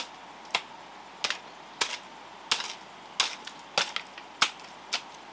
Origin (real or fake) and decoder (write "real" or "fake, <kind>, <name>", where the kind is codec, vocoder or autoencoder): real